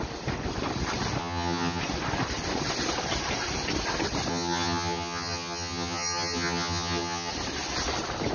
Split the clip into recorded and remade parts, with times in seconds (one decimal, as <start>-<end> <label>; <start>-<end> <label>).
0.0-1.2 recorded; 1.2-1.8 remade; 1.8-4.3 recorded; 4.3-7.3 remade; 7.3-8.3 recorded